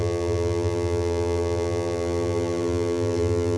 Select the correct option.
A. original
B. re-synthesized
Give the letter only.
B